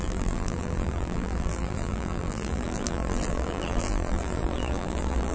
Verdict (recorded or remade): remade